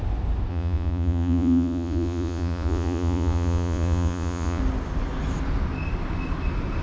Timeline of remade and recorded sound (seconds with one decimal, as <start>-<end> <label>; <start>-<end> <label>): 0.0-0.5 recorded; 0.5-4.6 remade; 4.6-6.8 recorded